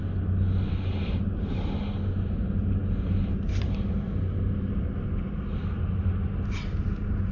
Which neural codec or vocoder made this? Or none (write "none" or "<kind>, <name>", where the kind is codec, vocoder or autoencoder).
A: none